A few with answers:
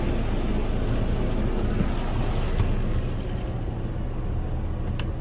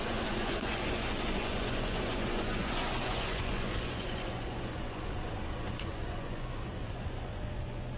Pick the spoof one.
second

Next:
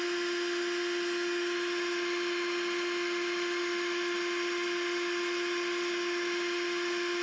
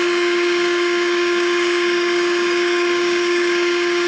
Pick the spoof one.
second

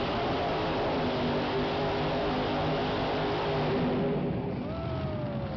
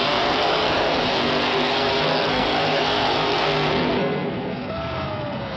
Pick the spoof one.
second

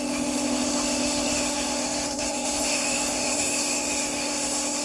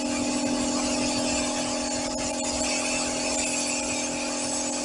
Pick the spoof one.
first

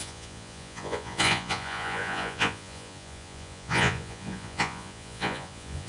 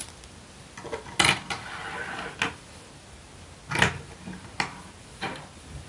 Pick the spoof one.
first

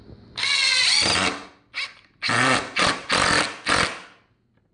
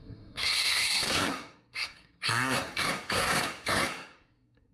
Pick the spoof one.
second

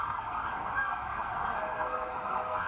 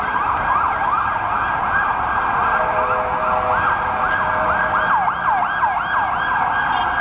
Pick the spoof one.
first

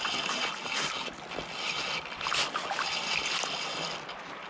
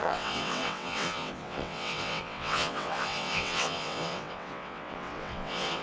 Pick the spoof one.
second